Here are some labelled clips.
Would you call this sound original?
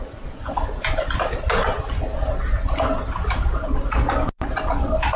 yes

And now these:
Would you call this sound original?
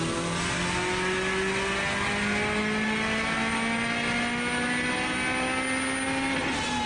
yes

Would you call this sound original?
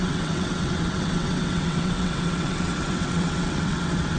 no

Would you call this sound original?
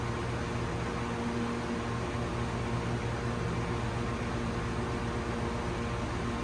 yes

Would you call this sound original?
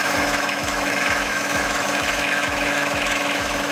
no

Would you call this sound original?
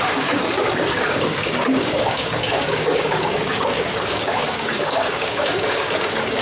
no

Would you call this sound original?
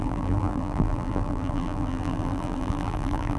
no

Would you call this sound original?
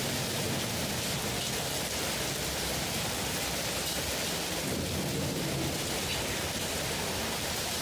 yes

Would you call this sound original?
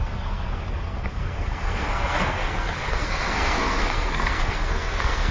no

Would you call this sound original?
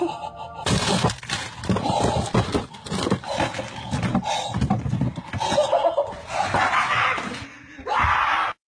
yes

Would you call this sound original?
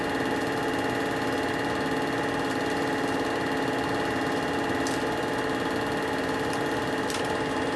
yes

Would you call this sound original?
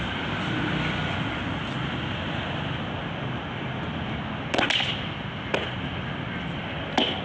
yes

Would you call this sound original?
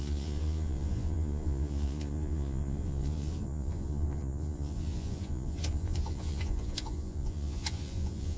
no